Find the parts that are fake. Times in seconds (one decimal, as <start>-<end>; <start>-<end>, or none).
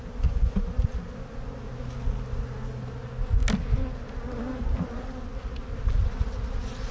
none